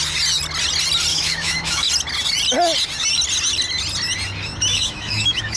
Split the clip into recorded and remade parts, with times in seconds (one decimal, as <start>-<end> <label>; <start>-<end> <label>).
0.0-1.1 recorded; 1.1-1.9 remade; 1.9-4.7 recorded; 4.7-5.6 remade